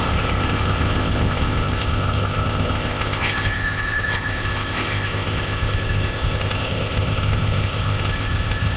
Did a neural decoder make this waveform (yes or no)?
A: yes